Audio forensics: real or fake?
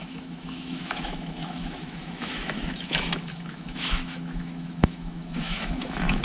fake